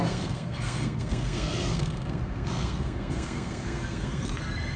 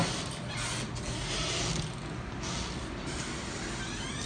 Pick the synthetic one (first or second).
first